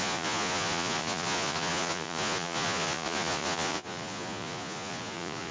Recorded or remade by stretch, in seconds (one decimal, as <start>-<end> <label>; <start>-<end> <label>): 0.0-5.5 remade